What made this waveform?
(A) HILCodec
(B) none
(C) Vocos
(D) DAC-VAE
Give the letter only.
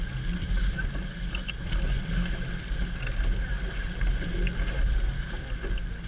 B